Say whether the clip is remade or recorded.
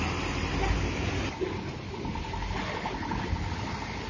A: recorded